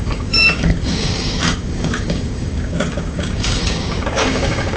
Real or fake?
fake